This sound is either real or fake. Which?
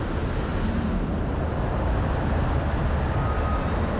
real